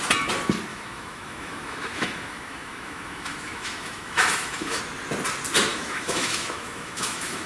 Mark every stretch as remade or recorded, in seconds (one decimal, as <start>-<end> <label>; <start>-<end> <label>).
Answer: 0.0-0.7 recorded; 0.7-4.8 remade; 4.8-5.7 recorded; 5.7-7.5 remade